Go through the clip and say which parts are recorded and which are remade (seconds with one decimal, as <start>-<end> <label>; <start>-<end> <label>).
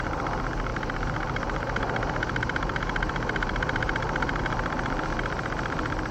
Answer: 0.0-0.7 recorded; 0.7-4.4 remade; 4.4-6.1 recorded